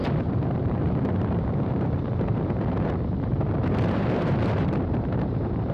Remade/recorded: remade